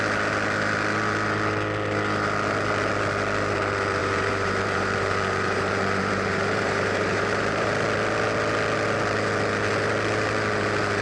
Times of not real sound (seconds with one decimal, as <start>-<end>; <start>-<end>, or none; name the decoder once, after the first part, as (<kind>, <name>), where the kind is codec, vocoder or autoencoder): 4.0-7.7 (vocoder, BigVGAN v2)